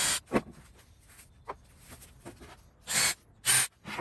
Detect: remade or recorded recorded